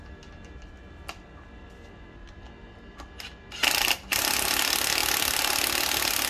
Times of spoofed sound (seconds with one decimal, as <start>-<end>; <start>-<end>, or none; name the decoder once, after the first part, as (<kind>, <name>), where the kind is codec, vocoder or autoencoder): none